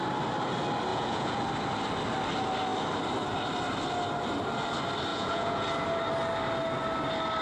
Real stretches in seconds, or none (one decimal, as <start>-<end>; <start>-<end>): 0.0-0.9; 1.4-5.1; 5.7-7.4